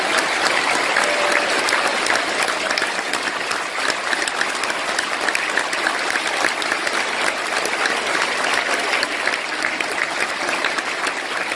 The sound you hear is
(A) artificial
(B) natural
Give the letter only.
B